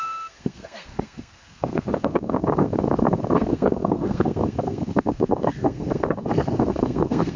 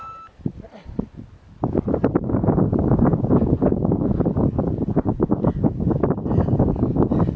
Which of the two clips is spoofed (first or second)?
first